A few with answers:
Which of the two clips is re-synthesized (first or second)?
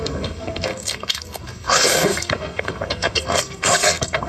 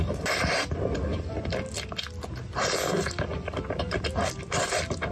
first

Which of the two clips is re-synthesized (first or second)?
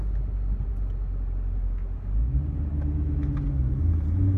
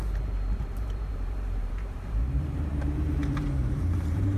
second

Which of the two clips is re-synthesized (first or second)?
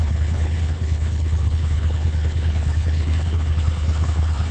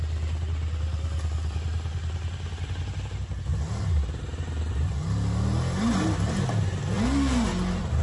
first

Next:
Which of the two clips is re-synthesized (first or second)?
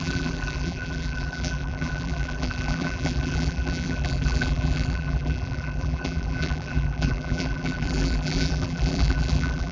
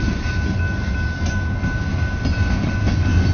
first